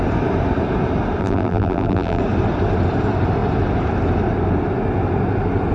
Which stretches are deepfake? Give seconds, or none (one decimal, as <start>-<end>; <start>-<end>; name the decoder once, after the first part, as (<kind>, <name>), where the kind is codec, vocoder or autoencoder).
1.2-2.2 (vocoder, BigVGAN v2)